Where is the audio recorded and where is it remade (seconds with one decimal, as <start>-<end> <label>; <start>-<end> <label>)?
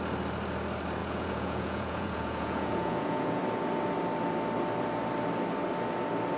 0.0-1.0 recorded; 1.0-3.4 remade; 3.4-6.4 recorded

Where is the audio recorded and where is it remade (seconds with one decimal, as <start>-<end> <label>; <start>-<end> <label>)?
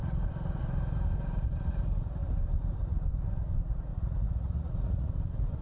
0.0-3.9 recorded; 3.9-5.1 remade; 5.1-5.6 recorded